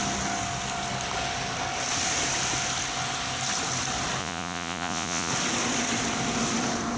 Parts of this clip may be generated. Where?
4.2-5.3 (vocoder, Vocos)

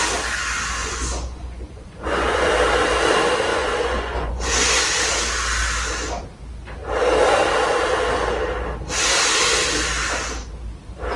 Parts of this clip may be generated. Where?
0.8-2.5 (vocoder, Vocos); 3.5-4.8